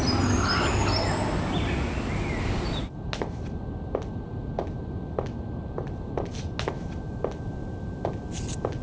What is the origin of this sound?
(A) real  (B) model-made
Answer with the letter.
A